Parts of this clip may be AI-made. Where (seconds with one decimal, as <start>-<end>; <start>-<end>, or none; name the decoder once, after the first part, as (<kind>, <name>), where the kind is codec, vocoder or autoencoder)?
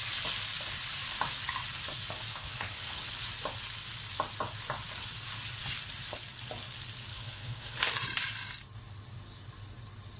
2.3-3.1 (codec, HILCodec); 7.1-7.9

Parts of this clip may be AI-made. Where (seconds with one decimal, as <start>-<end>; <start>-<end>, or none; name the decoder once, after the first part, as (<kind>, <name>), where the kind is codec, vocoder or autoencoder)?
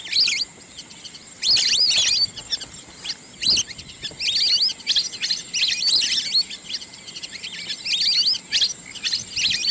none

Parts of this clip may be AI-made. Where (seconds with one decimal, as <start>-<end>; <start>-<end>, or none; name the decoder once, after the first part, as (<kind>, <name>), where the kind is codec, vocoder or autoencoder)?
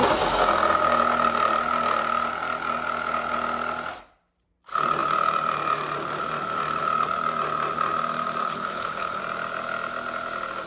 8.4-9.2 (codec, HILCodec)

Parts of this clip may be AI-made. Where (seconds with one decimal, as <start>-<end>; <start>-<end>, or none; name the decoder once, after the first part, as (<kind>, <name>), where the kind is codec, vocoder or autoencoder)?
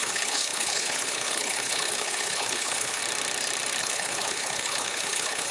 0.0-3.0 (codec, HILCodec); 3.8-5.5